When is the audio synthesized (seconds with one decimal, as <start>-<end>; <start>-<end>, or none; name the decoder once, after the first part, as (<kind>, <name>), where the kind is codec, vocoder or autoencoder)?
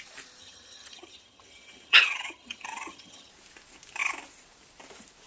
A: 0.4-3.3 (vocoder, HiFi-GAN)